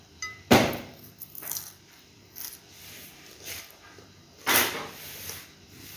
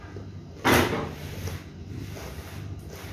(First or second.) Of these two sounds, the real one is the second